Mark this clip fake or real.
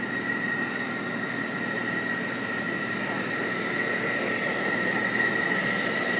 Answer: real